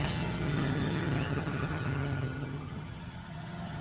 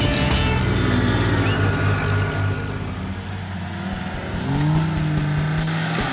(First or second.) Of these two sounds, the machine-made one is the first